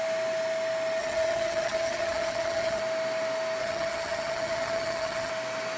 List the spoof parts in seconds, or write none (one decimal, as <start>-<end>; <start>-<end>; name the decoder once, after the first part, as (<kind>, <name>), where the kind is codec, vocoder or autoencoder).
1.0-2.8 (vocoder, HiFi-GAN); 3.6-5.3